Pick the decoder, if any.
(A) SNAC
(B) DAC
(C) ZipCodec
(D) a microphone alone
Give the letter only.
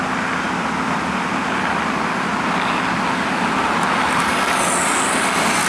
D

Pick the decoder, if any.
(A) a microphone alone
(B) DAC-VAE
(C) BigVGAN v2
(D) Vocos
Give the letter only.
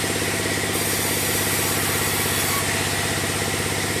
A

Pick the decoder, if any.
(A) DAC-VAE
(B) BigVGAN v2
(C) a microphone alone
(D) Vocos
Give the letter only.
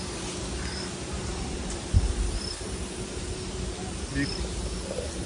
C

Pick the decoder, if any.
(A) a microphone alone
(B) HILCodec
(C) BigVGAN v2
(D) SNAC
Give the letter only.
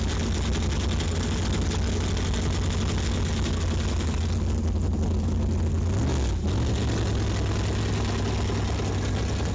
A